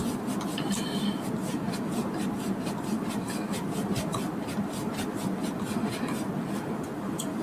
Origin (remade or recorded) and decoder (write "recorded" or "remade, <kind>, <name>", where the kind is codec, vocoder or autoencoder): remade, vocoder, BigVGAN v2